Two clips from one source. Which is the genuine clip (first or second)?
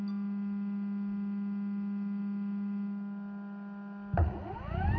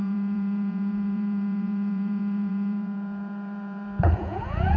first